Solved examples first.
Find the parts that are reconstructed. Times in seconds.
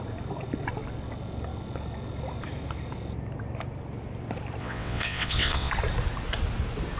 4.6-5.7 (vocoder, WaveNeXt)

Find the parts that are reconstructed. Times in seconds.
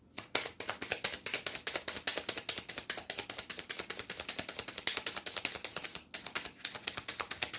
none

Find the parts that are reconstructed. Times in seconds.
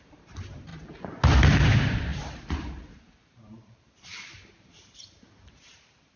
0.0-0.7 (vocoder, BigVGAN v2); 1.7-6.2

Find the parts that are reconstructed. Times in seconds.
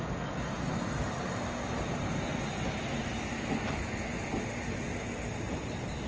none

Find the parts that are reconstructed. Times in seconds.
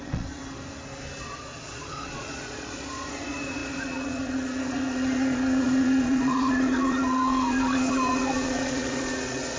0.0-0.4 (vocoder, Vocos); 1.2-9.6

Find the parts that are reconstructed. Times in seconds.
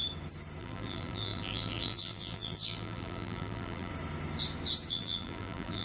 0.6-3.9 (vocoder, BigVGAN v2); 4.9-5.8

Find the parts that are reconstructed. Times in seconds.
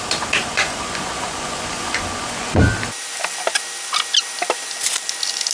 0.4-2.6 (vocoder, Vocos)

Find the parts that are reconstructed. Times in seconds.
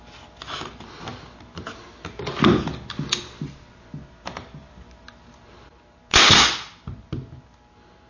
none